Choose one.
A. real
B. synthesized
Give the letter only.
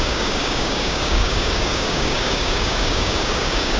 B